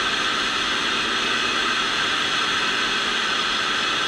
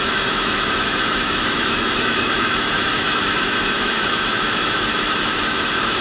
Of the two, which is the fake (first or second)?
second